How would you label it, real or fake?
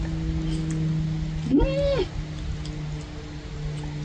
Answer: real